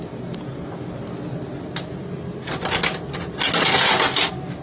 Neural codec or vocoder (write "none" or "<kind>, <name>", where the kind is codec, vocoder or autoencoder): none